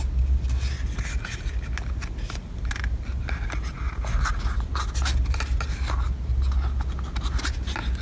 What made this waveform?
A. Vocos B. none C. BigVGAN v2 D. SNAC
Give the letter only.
B